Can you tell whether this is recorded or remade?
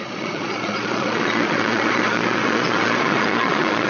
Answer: remade